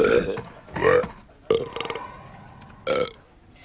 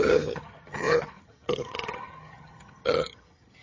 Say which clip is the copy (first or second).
second